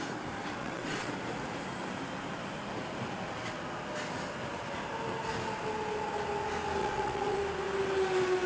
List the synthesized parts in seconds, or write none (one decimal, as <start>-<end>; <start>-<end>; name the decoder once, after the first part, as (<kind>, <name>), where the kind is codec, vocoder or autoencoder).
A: 0.6-1.1 (vocoder, WaveNeXt); 6.8-7.4